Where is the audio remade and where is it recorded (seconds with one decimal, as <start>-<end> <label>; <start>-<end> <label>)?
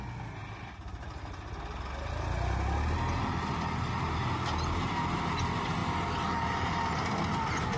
0.0-7.8 recorded